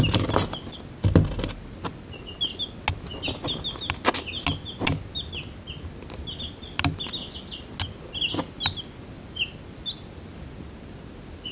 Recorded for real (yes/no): yes